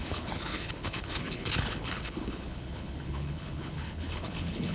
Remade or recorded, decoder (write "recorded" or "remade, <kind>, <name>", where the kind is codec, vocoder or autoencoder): remade, codec, HILCodec